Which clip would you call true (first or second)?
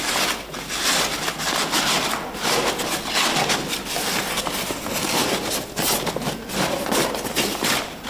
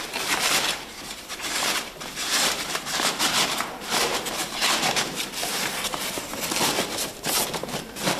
first